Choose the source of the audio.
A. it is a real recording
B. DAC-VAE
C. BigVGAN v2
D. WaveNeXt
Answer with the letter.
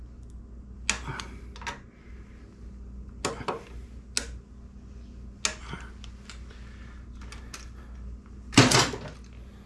A